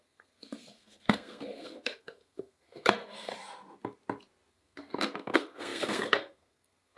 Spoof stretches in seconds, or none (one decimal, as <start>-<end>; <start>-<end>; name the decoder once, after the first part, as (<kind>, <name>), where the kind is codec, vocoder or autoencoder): 0.0-3.3 (codec, SNAC); 4.5-7.0